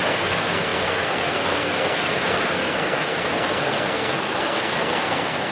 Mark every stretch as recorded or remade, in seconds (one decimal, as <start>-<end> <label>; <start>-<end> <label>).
0.0-5.5 remade

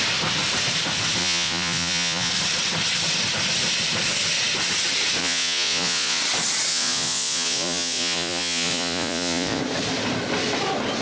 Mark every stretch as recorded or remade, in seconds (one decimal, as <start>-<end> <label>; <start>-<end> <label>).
0.0-1.2 recorded; 1.2-2.3 remade; 2.3-5.2 recorded; 5.2-6.2 remade; 6.2-6.7 recorded; 6.7-9.6 remade; 9.6-11.0 recorded

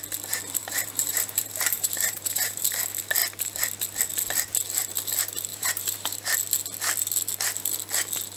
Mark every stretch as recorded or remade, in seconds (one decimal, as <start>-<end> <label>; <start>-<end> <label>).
0.0-0.6 recorded; 0.6-2.8 remade; 2.8-5.5 recorded; 5.5-6.3 remade; 6.3-8.4 recorded

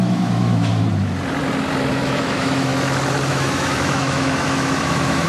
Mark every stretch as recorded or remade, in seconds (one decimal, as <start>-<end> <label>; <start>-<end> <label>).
0.0-0.7 remade; 0.7-1.9 recorded; 1.9-2.7 remade; 2.7-3.3 recorded; 3.3-5.3 remade

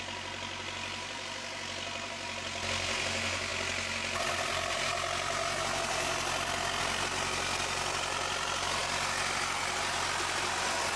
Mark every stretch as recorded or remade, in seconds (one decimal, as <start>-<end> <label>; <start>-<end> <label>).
0.0-11.0 recorded

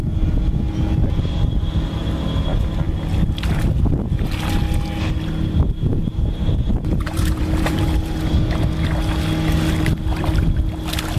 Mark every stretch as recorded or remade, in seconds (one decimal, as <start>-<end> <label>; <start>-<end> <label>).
0.0-5.9 recorded; 5.9-8.1 remade; 8.1-11.2 recorded

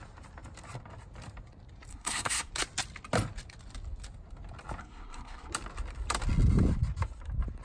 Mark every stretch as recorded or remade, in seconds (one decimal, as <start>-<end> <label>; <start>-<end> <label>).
0.0-1.9 recorded; 1.9-2.5 remade; 2.5-4.8 recorded; 4.8-5.5 remade; 5.5-7.6 recorded

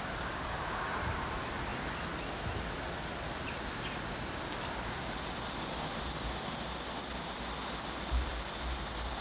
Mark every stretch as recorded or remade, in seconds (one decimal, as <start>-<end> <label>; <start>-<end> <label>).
0.0-9.2 recorded